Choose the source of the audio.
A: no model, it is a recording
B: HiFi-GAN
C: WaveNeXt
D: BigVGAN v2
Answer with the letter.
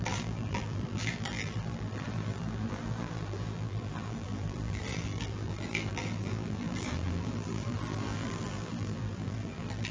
D